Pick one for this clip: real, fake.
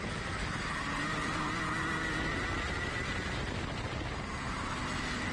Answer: real